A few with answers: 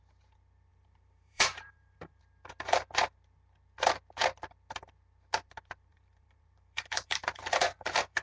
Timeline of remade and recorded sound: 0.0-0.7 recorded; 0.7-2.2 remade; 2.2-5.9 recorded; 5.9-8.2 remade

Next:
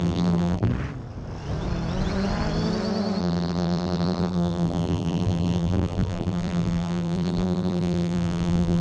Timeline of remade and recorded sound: 0.0-0.7 remade; 0.7-3.2 recorded; 3.2-8.8 remade

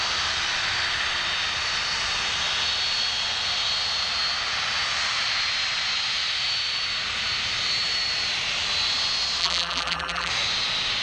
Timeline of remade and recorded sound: 0.0-9.4 recorded; 9.4-10.3 remade; 10.3-11.0 recorded